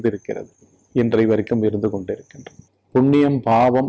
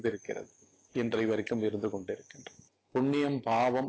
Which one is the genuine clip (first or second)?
first